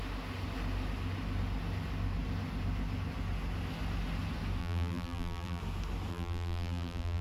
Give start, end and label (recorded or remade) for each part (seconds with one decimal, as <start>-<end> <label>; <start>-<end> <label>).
0.0-4.6 recorded; 4.6-5.6 remade; 5.6-6.1 recorded; 6.1-7.2 remade